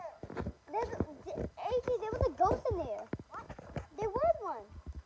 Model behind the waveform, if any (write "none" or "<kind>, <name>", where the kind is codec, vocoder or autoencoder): none